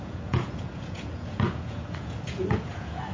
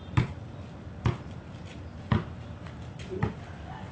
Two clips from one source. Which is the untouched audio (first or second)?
second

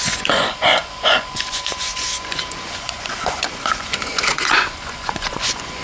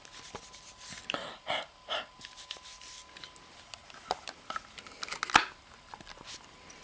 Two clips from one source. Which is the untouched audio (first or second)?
second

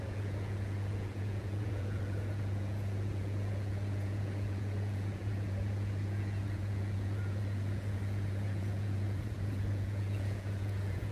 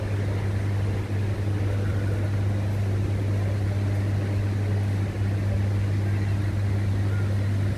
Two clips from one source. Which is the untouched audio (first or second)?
second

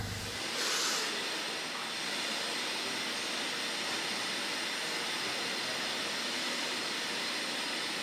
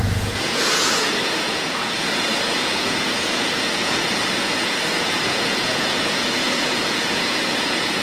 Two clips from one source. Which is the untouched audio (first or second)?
first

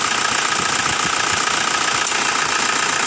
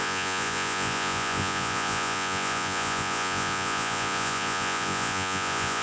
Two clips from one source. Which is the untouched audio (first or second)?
first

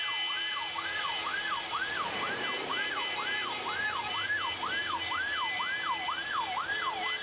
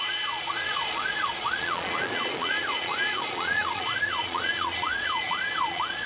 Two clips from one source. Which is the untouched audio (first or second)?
first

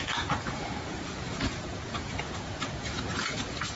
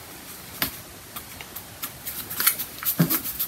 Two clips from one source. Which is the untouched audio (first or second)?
second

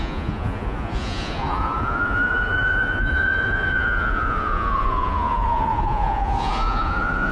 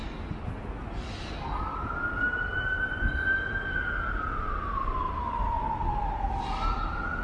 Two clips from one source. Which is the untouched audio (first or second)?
second